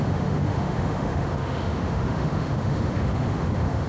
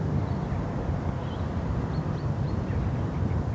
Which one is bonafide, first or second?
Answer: second